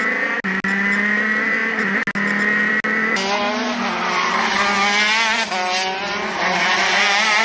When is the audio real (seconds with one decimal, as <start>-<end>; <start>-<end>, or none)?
0.0-7.4